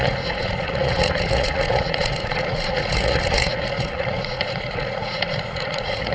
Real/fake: fake